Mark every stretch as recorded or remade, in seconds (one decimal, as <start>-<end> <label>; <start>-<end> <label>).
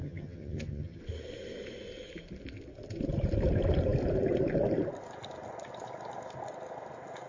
0.0-1.0 remade; 1.0-7.3 recorded